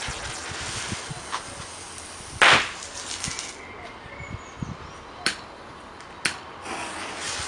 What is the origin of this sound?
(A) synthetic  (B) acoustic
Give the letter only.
B